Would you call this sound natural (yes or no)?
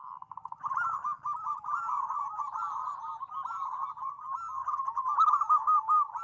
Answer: yes